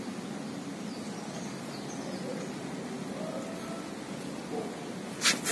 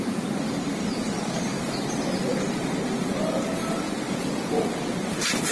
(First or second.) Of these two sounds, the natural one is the first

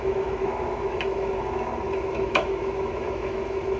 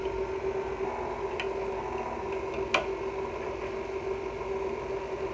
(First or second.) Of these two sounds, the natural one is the second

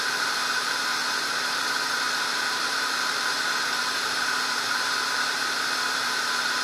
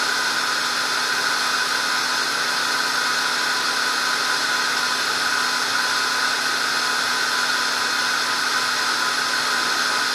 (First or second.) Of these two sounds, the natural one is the second